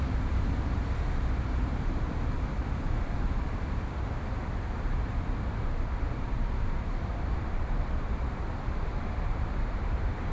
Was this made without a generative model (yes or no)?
no